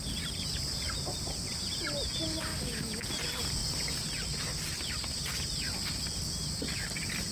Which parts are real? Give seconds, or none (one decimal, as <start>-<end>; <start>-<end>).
0.0-7.3